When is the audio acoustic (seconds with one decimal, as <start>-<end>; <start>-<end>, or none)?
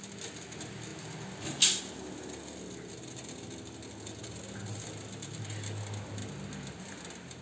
0.0-7.4